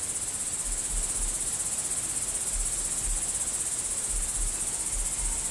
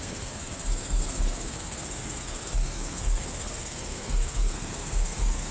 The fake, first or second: second